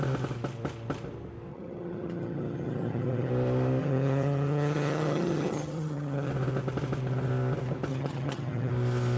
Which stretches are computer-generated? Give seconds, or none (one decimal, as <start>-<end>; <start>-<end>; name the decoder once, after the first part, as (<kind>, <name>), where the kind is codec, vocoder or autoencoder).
1.5-3.3 (vocoder, HiFi-GAN); 3.8-6.3; 7.9-8.7